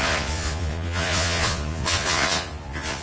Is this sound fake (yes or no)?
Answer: yes